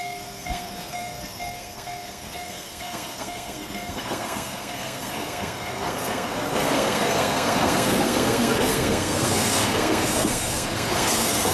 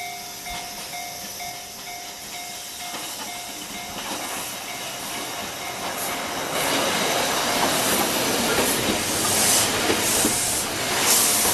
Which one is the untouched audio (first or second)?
second